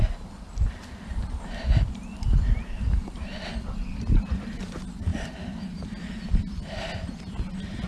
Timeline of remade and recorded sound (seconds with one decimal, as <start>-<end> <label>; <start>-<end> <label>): 0.0-1.1 recorded; 1.1-3.3 remade; 3.3-7.9 recorded